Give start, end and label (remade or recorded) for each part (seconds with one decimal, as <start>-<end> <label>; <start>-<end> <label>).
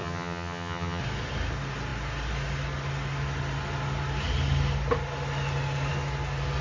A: 0.0-1.0 remade; 1.0-6.6 recorded